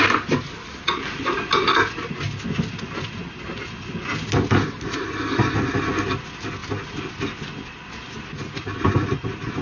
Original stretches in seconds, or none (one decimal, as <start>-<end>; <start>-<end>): 0.0-9.6